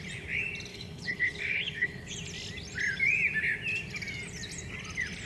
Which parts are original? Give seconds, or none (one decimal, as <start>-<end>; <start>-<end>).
0.0-0.7; 2.1-5.3